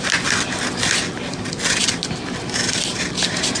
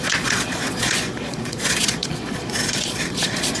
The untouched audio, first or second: first